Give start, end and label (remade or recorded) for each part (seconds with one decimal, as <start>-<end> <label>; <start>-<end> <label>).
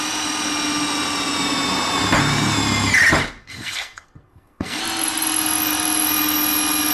0.0-3.4 recorded; 3.4-4.8 remade; 4.8-6.9 recorded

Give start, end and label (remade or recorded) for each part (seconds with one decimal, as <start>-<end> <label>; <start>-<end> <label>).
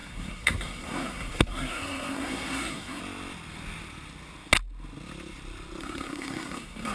0.0-3.0 remade; 3.0-5.8 recorded; 5.8-6.9 remade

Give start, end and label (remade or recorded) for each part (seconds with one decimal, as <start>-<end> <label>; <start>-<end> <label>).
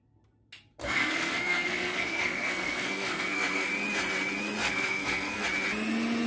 0.0-0.8 recorded; 0.8-3.7 remade; 3.7-4.6 recorded; 4.6-5.4 remade; 5.4-6.3 recorded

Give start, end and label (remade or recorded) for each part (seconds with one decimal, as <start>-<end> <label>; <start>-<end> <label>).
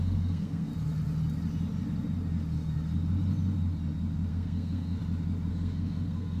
0.0-0.7 remade; 0.7-4.3 recorded; 4.3-5.0 remade; 5.0-5.5 recorded; 5.5-6.4 remade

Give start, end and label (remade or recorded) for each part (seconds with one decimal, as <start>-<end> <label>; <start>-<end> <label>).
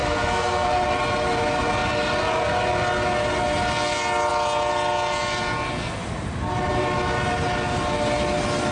0.0-0.7 remade; 0.7-8.7 recorded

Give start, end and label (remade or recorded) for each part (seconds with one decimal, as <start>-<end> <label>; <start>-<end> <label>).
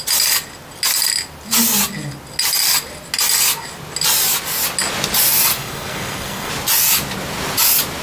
0.0-5.5 recorded; 5.5-6.5 remade; 6.5-8.0 recorded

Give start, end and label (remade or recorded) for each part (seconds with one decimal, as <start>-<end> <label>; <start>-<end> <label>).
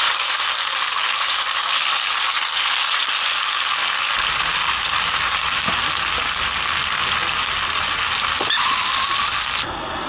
0.0-10.1 recorded